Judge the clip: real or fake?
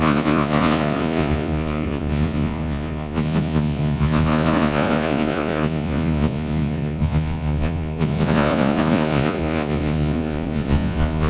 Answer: fake